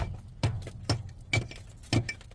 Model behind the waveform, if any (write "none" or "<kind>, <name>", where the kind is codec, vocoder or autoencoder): none